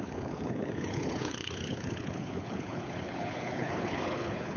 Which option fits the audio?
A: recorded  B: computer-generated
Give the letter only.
B